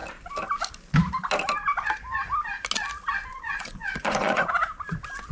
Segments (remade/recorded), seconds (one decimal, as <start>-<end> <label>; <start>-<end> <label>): 0.0-3.3 recorded; 3.3-4.5 remade; 4.5-5.3 recorded